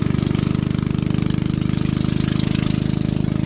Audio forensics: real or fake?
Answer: real